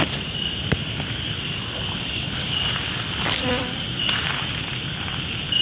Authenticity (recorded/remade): recorded